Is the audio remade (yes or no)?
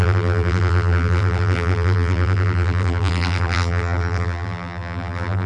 yes